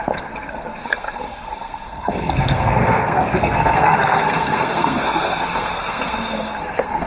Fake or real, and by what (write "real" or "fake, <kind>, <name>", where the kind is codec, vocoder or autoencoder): fake, codec, SNAC